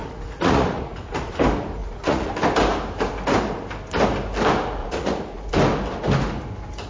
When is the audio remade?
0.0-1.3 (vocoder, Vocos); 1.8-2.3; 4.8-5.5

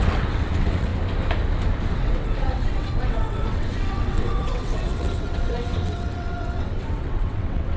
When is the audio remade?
0.0-0.9 (vocoder, WaveNeXt); 1.9-7.8